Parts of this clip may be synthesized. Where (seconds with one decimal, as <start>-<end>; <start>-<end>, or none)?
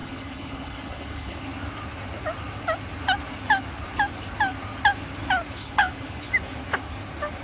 0.0-1.4; 5.6-6.3